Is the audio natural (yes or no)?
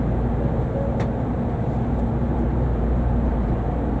no